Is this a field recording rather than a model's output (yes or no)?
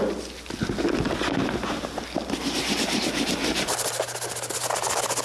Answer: yes